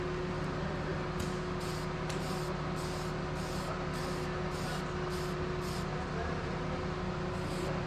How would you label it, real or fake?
real